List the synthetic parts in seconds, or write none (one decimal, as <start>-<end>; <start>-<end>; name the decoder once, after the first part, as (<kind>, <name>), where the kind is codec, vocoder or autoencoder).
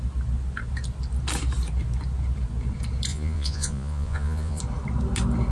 3.1-4.6 (vocoder, Vocos)